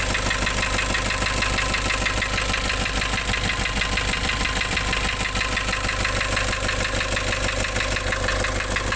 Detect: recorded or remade recorded